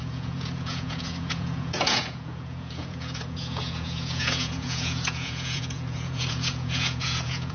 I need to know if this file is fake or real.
fake